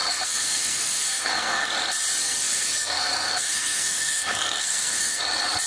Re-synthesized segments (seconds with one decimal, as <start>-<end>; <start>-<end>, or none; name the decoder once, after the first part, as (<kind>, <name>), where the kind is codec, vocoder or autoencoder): 0.0-1.7 (codec, SNAC); 2.2-5.2